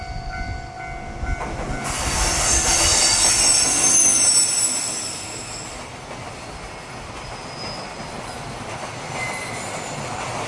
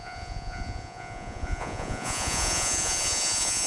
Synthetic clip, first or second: second